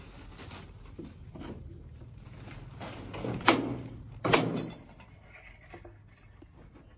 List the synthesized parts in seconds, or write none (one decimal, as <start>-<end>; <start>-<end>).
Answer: 1.3-5.5